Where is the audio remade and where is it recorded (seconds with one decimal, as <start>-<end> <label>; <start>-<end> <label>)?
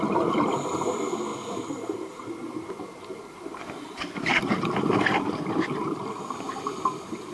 0.0-1.3 recorded; 1.3-2.8 remade; 2.8-4.3 recorded; 4.3-5.8 remade; 5.8-7.3 recorded